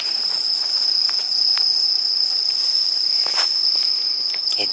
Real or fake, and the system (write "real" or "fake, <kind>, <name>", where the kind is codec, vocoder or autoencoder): real